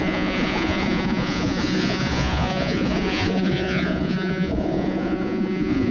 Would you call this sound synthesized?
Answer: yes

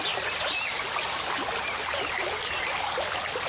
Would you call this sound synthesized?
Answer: no